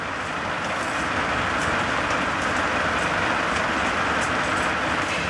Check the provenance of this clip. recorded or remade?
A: recorded